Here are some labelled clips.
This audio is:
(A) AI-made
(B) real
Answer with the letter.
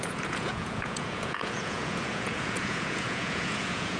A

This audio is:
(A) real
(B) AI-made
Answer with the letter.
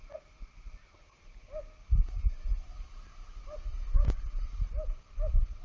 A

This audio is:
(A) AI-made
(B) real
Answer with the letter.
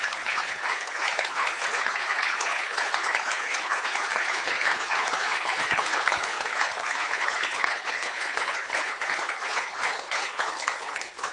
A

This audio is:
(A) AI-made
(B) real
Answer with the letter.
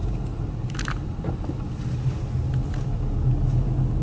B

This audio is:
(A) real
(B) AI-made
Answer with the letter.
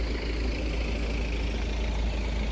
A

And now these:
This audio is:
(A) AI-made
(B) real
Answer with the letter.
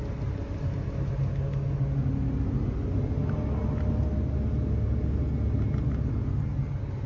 B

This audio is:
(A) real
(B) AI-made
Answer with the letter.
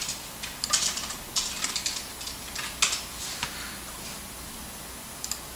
A